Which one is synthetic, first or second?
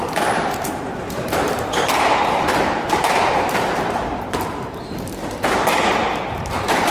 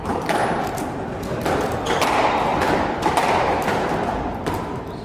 first